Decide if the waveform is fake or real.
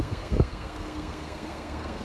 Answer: fake